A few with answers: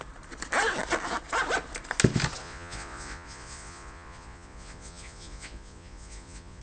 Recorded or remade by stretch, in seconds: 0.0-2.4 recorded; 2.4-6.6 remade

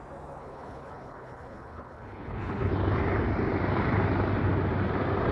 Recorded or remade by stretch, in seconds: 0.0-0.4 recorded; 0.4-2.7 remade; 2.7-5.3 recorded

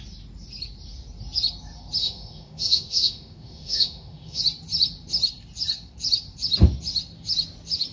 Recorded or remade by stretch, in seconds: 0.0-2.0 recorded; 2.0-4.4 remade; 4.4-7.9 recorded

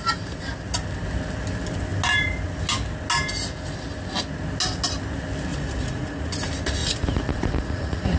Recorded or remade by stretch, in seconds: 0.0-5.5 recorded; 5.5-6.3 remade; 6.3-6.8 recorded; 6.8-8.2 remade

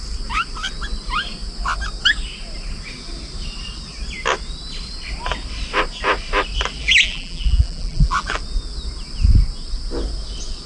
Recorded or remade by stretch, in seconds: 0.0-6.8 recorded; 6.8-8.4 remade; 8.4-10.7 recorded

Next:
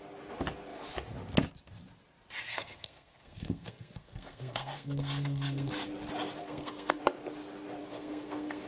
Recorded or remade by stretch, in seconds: 0.0-2.5 recorded; 2.5-5.7 remade; 5.7-6.4 recorded; 6.4-7.0 remade; 7.0-7.8 recorded; 7.8-8.7 remade

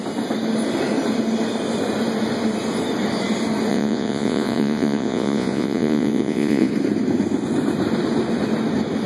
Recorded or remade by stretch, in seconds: 0.0-3.7 recorded; 3.7-6.7 remade; 6.7-9.1 recorded